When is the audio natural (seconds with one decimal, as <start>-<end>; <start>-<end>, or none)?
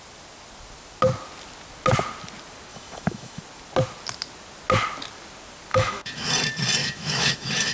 0.0-2.7; 3.4-5.7; 6.3-6.8